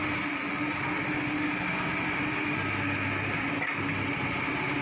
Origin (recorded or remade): recorded